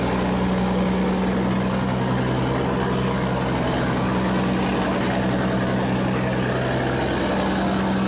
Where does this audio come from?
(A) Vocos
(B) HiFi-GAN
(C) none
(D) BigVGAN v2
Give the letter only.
C